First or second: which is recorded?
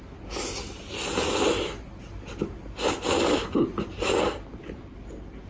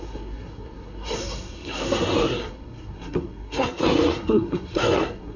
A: first